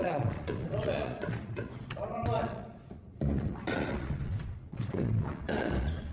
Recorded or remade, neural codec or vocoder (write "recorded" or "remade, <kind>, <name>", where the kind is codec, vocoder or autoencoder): remade, vocoder, Vocos